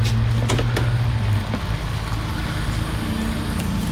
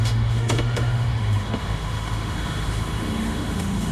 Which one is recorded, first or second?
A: first